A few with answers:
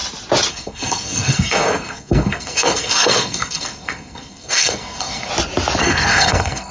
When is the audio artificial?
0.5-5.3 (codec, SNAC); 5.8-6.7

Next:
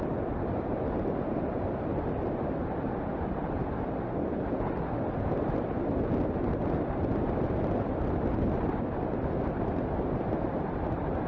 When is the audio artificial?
none

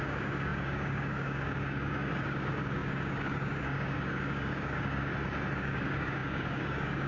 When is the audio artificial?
0.0-5.1 (codec, DAC); 5.6-7.1

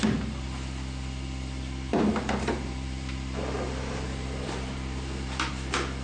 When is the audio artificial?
1.9-5.5 (vocoder, BigVGAN v2)

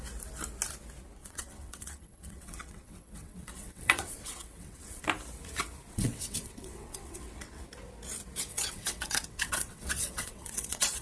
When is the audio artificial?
1.2-5.0 (vocoder, WaveNeXt); 5.9-7.6; 8.5-11.0

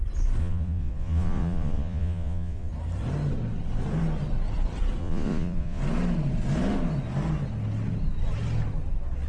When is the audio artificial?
0.4-2.7 (vocoder, Vocos); 5.0-5.8